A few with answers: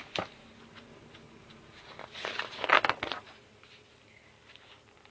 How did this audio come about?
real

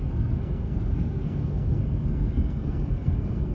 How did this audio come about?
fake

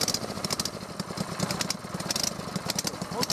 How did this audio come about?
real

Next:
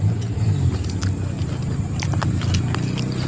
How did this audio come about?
real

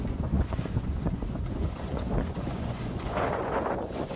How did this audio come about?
fake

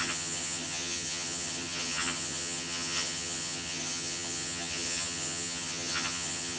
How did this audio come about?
fake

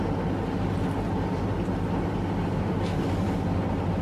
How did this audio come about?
real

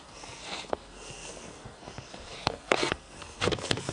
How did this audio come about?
fake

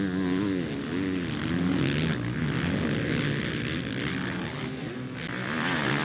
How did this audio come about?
real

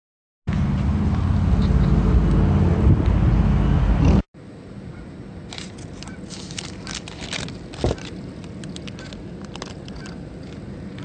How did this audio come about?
real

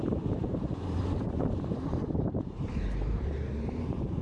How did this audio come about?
fake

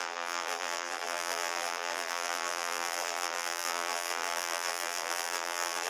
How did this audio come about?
fake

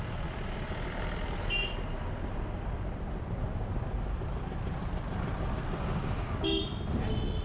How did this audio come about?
real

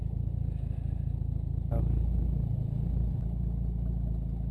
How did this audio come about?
real